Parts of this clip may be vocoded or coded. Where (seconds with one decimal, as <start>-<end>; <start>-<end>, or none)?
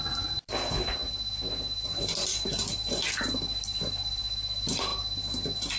none